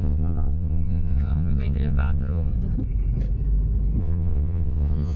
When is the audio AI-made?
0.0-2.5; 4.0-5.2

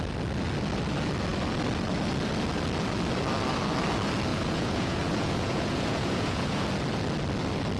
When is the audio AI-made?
4.3-6.7

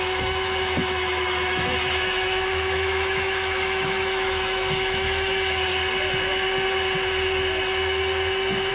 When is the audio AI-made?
0.0-5.7

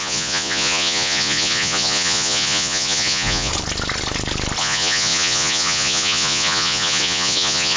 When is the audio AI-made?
0.0-3.5; 4.6-7.8

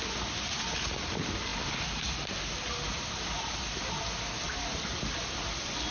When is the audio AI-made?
none

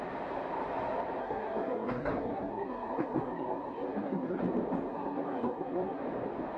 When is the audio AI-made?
1.2-4.4; 4.9-6.0